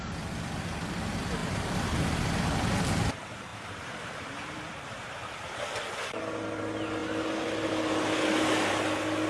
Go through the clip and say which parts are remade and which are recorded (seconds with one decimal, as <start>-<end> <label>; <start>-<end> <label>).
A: 0.0-1.4 recorded; 1.4-2.3 remade; 2.3-3.5 recorded; 3.5-5.2 remade; 5.2-9.3 recorded